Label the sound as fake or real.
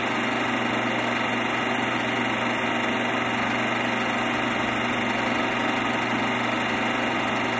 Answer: real